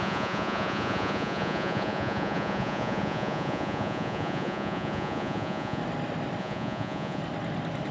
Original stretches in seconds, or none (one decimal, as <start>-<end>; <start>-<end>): 5.8-6.4; 7.2-7.9